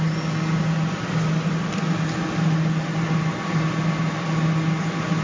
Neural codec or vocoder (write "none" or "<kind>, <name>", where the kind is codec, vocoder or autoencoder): none